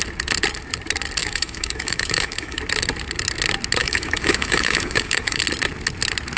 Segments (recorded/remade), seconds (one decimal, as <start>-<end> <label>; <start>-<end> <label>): 0.0-1.2 recorded; 1.2-2.6 remade; 2.6-3.8 recorded; 3.8-5.4 remade; 5.4-6.4 recorded